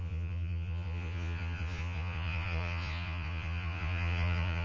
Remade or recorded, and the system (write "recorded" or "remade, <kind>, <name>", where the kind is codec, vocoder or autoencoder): remade, vocoder, Vocos